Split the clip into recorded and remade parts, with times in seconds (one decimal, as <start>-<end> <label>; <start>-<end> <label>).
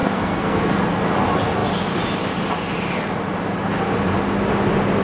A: 0.0-0.8 remade; 0.8-5.0 recorded